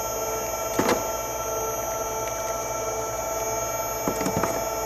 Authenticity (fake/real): real